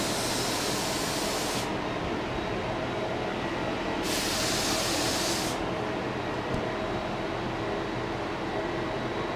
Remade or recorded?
recorded